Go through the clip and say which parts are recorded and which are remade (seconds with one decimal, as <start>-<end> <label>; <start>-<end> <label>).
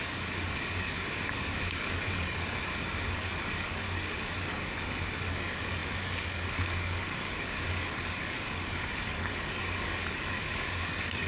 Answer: 0.0-11.3 remade